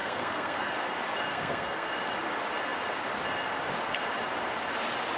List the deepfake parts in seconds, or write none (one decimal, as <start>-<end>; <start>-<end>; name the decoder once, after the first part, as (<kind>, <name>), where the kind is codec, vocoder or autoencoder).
0.0-0.7 (codec, SNAC); 1.3-1.9